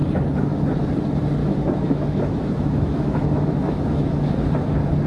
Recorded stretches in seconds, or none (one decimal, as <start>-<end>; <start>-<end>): 0.0-1.4; 4.5-5.1